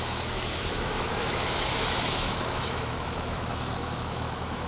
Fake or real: fake